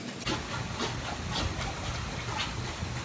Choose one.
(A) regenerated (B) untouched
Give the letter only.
B